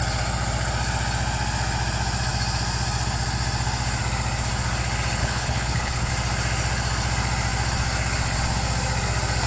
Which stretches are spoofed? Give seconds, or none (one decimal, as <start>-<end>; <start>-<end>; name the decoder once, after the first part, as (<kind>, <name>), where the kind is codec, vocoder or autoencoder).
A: 5.2-6.1 (codec, HILCodec)